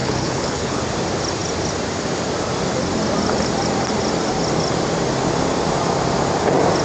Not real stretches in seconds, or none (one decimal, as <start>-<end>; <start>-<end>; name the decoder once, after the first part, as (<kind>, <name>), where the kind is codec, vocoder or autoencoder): 0.0-0.8 (codec, HILCodec)